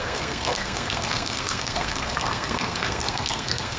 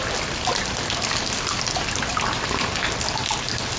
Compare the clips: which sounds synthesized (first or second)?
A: first